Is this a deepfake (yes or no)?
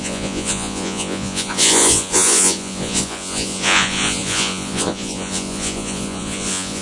yes